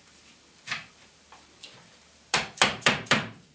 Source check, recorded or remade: remade